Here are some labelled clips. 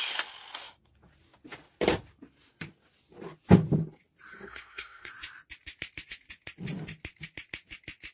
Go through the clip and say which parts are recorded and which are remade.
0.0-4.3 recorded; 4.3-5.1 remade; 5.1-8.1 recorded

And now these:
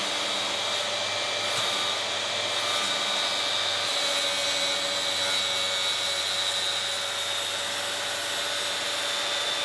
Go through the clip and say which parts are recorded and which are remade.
0.0-9.6 recorded

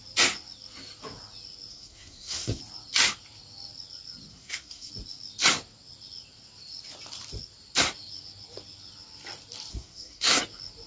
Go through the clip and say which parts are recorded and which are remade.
0.0-1.7 recorded; 1.7-2.6 remade; 2.6-4.3 recorded; 4.3-4.9 remade; 4.9-9.7 recorded; 9.7-10.4 remade; 10.4-10.9 recorded

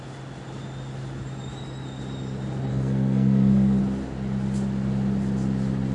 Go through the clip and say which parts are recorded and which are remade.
0.0-2.7 recorded; 2.7-3.8 remade; 3.8-5.9 recorded

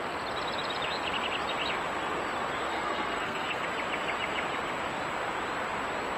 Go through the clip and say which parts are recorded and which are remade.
0.0-2.6 recorded; 2.6-3.6 remade; 3.6-6.2 recorded

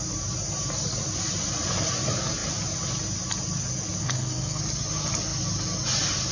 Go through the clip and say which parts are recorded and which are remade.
0.0-4.0 recorded; 4.0-4.6 remade; 4.6-6.3 recorded

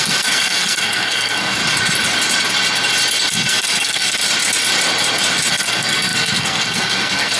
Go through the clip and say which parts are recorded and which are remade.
0.0-1.6 remade; 1.6-3.3 recorded; 3.3-4.2 remade; 4.2-5.5 recorded; 5.5-7.4 remade

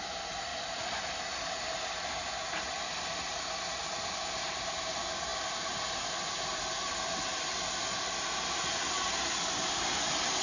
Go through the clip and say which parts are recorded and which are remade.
0.0-10.4 recorded